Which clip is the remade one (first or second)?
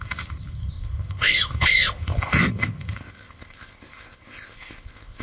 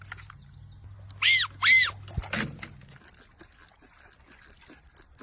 first